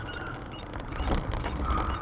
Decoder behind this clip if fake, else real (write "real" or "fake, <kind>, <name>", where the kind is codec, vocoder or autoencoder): real